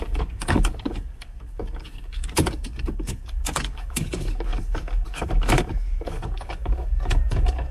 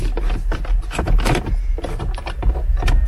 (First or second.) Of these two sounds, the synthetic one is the first